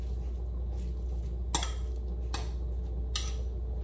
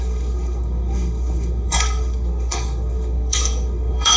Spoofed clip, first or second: second